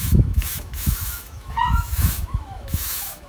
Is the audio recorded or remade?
remade